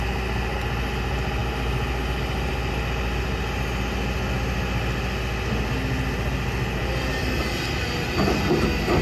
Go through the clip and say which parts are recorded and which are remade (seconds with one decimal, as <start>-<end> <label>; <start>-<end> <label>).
0.0-6.8 recorded; 6.8-8.5 remade; 8.5-9.0 recorded